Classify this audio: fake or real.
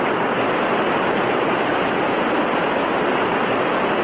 real